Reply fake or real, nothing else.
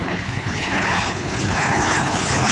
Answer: fake